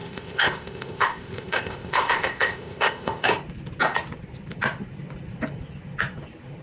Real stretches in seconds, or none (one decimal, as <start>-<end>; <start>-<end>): 3.3-6.6